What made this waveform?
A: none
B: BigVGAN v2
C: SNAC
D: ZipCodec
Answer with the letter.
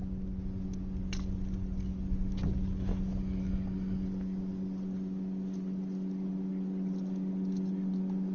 A